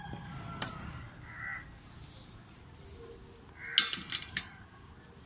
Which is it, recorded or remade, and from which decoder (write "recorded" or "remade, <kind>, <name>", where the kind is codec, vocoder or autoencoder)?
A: recorded